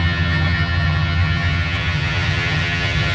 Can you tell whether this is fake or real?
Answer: fake